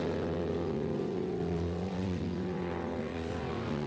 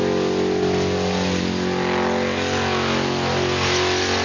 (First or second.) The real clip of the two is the second